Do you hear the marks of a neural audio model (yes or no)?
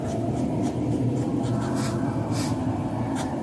yes